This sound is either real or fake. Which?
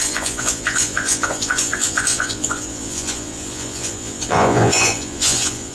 fake